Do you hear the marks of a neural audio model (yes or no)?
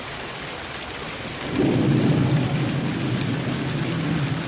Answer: no